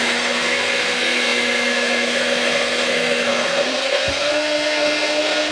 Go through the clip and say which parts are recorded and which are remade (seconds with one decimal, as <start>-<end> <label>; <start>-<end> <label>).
0.0-5.5 remade